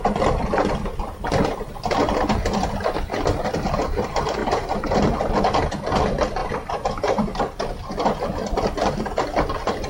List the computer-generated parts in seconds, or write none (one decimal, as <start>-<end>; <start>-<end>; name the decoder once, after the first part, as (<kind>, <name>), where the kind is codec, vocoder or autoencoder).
4.4-5.3 (vocoder, BigVGAN v2); 6.4-7.4